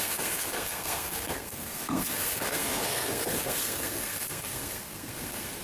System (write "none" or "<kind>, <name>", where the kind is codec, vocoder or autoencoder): codec, SNAC